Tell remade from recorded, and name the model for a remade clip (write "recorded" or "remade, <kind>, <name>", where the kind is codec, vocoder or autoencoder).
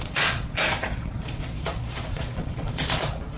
remade, vocoder, Vocos